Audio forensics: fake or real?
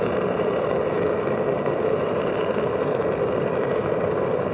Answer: real